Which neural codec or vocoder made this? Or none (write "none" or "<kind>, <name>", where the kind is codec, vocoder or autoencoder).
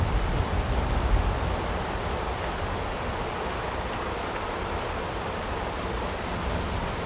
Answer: none